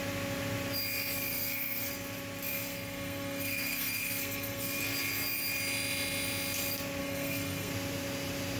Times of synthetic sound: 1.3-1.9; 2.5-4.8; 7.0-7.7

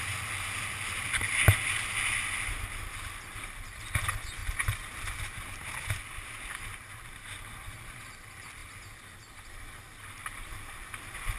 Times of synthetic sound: none

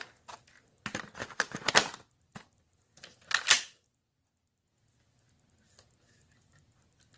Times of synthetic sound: 1.2-1.7

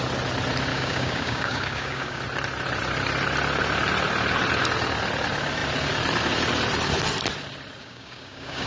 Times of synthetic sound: 0.7-2.2; 7.8-8.7

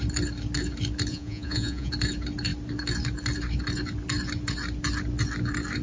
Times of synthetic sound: 1.1-1.9